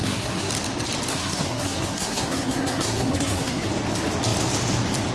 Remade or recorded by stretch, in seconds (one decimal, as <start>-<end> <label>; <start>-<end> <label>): 0.0-0.5 remade; 0.5-1.1 recorded; 1.1-3.7 remade; 3.7-5.1 recorded